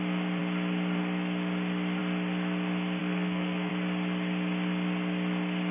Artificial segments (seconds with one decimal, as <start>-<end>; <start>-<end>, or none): 3.0-3.7